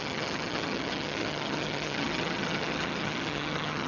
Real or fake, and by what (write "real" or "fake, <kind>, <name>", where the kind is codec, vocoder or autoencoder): fake, vocoder, HiFi-GAN